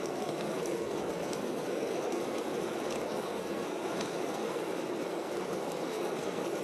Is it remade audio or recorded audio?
remade